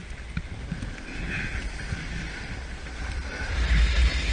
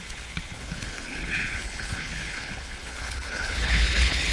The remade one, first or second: second